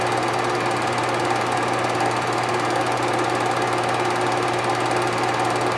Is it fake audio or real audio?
real